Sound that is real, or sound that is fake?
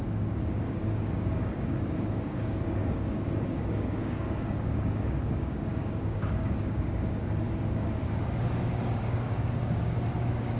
fake